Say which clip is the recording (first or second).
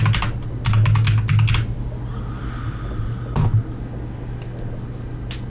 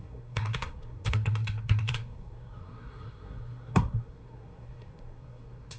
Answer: first